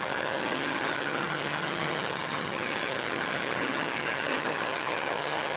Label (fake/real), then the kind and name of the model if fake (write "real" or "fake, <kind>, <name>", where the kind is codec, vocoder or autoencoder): fake, vocoder, HiFi-GAN